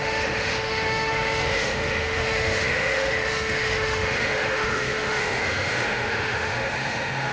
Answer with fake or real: fake